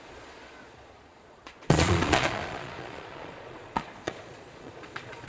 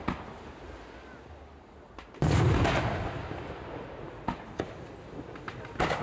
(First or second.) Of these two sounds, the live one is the second